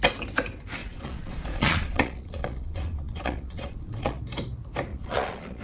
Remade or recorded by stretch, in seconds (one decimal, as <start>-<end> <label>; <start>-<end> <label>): 0.0-0.8 recorded; 0.8-4.2 remade; 4.2-4.9 recorded; 4.9-5.6 remade